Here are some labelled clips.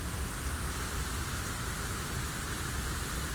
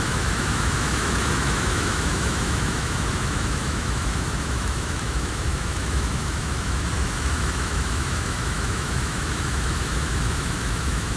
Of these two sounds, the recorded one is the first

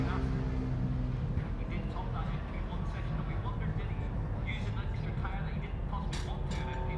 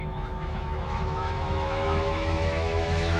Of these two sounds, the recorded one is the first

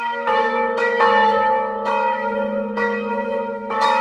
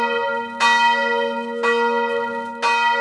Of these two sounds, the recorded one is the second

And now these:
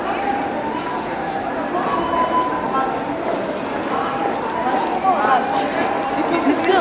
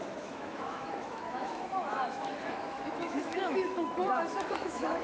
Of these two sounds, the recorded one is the first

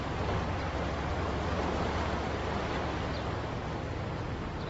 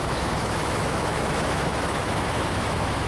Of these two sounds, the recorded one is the first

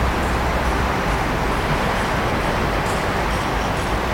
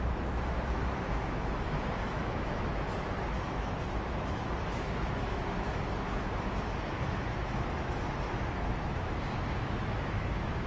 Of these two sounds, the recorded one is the first